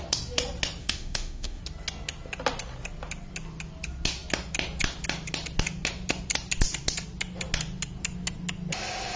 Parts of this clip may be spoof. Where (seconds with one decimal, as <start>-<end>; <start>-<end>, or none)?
0.8-1.6